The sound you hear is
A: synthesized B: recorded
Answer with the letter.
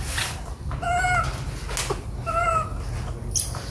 B